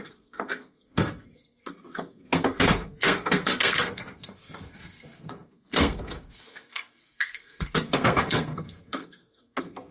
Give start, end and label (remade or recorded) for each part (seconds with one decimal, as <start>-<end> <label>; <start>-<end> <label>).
0.0-9.9 remade